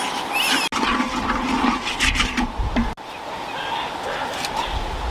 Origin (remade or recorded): recorded